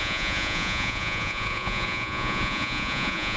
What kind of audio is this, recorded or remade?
remade